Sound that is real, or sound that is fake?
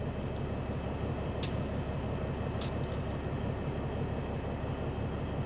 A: real